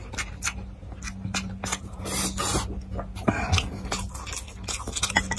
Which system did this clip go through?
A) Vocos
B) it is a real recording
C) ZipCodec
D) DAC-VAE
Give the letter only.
B